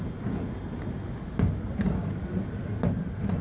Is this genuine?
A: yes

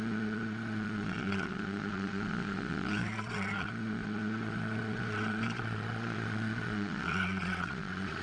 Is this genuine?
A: no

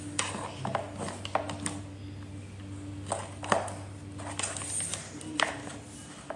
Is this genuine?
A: yes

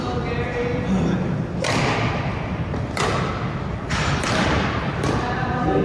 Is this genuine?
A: yes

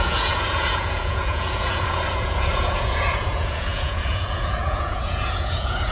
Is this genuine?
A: no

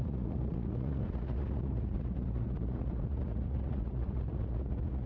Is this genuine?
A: no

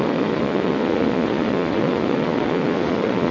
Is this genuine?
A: no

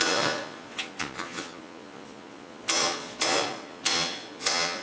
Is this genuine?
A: no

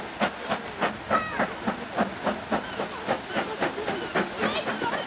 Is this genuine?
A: yes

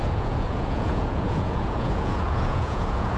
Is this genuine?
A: no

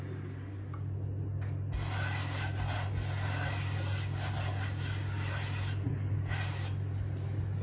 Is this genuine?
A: yes